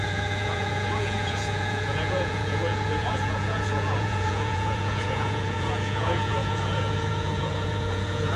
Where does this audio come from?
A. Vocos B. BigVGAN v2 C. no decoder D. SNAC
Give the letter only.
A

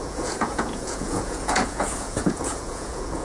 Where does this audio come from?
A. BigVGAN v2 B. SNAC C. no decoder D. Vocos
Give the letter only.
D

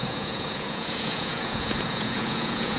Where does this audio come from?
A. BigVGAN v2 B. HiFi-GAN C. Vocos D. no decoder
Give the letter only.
C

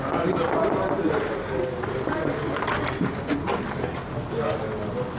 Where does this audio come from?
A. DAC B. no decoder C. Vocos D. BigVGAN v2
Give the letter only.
B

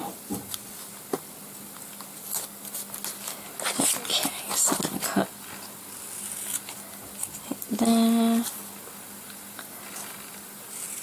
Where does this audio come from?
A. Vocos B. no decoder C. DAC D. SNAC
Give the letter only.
B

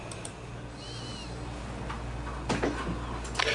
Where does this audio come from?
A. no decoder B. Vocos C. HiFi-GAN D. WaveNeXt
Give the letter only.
A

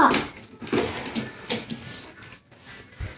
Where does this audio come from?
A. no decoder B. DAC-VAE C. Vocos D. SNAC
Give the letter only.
A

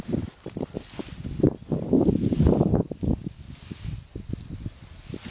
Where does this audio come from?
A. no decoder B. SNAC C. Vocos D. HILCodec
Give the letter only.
A